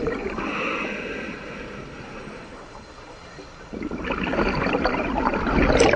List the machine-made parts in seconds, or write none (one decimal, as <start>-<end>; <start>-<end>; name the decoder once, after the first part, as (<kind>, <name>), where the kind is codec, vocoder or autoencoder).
2.2-3.4 (vocoder, BigVGAN v2); 4.3-4.9